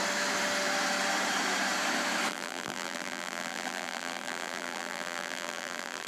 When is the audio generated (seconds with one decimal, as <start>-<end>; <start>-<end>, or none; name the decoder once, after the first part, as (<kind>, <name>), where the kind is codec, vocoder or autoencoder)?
2.3-6.1 (vocoder, BigVGAN v2)